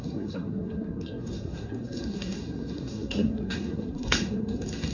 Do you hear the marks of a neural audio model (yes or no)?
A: yes